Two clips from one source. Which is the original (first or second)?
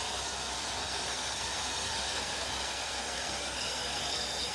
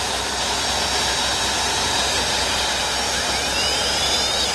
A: second